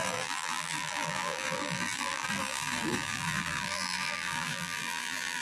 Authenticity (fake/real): fake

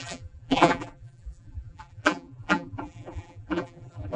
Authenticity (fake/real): fake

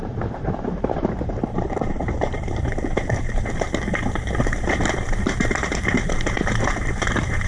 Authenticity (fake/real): fake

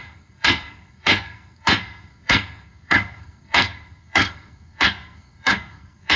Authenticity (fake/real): fake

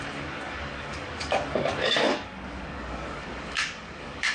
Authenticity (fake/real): fake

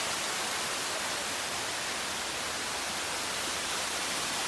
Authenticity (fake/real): real